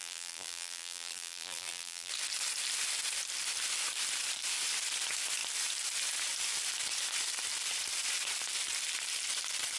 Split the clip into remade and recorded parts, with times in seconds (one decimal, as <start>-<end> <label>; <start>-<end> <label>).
0.0-2.1 remade; 2.1-9.8 recorded